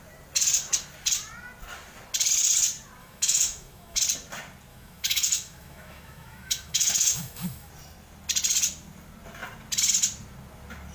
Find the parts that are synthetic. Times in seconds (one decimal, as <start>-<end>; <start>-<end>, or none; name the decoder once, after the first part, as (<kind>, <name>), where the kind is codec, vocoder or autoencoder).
3.0-4.0 (autoencoder, DAC-VAE); 4.7-7.7